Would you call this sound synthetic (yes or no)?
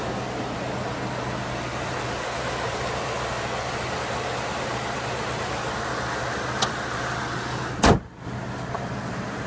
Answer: no